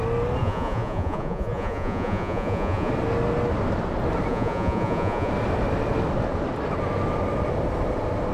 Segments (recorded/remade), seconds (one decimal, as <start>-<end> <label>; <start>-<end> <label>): 0.0-0.4 recorded; 0.4-2.9 remade; 2.9-4.3 recorded; 4.3-5.3 remade; 5.3-8.3 recorded